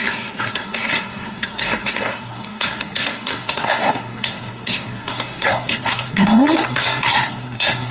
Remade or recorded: remade